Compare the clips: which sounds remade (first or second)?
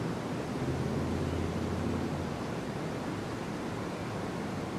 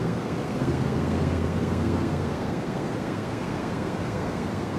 second